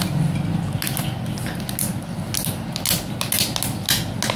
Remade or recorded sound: recorded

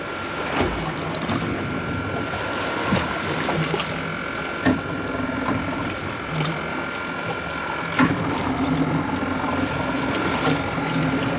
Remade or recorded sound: recorded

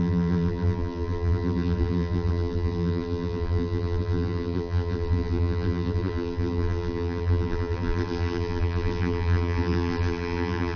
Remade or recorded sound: remade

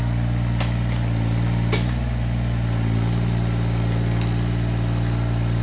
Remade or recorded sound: recorded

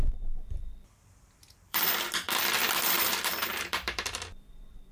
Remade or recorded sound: remade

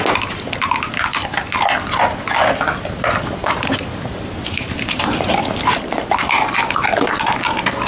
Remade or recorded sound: recorded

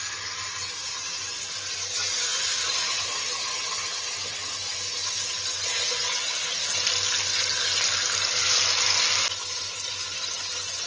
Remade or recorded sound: recorded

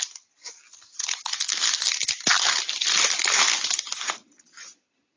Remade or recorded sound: recorded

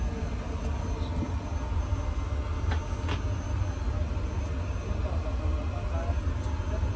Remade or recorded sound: recorded